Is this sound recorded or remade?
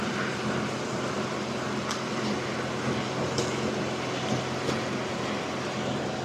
recorded